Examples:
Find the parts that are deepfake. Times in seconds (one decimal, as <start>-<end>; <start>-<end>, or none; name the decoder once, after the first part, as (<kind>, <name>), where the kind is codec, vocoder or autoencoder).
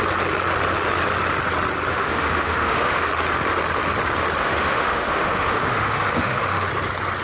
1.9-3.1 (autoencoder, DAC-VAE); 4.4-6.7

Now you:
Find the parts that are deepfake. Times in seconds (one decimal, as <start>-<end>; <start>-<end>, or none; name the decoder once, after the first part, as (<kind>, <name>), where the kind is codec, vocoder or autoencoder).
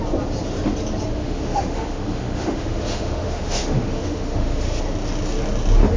1.2-4.8 (autoencoder, DAC-VAE)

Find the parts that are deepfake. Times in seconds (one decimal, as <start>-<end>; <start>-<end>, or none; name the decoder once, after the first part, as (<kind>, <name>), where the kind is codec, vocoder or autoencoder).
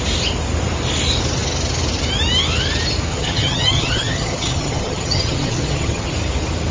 3.1-6.1 (vocoder, HiFi-GAN)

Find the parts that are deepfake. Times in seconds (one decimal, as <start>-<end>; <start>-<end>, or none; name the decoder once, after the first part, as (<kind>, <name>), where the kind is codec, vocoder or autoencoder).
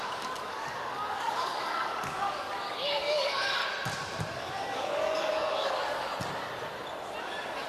0.0-3.6 (codec, DAC); 4.3-6.1; 7.2-7.7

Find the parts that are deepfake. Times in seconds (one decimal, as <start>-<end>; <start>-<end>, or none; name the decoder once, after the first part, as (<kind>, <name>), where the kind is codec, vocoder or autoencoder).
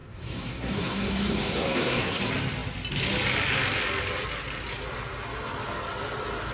0.0-2.2 (codec, SNAC)